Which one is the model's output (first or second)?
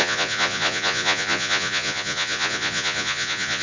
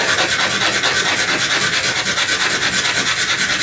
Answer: first